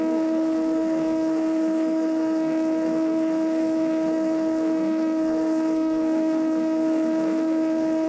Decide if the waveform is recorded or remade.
remade